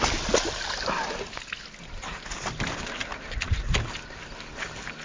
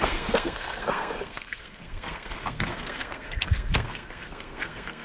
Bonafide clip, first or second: first